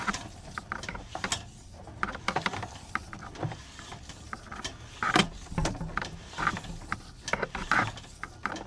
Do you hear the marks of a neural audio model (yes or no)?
no